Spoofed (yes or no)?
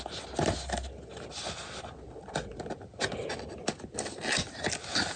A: no